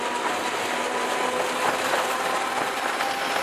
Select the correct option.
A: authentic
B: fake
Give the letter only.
A